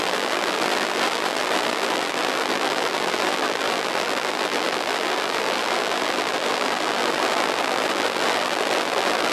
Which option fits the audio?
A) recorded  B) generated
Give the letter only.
B